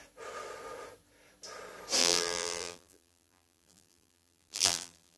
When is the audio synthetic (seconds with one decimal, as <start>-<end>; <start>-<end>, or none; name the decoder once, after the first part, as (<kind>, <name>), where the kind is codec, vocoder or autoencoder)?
2.0-5.2 (vocoder, BigVGAN v2)